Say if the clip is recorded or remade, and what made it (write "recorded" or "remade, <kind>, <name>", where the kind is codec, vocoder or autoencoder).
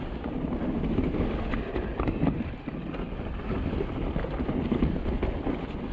recorded